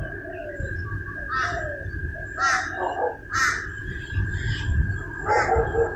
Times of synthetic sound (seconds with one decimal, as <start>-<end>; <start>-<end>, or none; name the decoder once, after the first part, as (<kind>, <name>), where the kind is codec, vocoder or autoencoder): 3.8-4.4 (vocoder, BigVGAN v2)